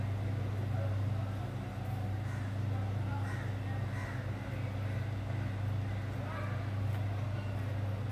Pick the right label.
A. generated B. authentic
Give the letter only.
B